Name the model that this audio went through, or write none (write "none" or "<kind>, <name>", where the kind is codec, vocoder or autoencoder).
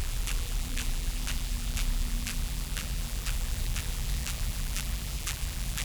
vocoder, BigVGAN v2